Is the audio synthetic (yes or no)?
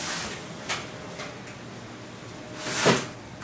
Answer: no